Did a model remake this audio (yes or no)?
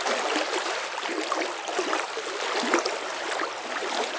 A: no